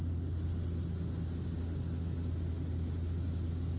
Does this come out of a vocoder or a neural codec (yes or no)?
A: no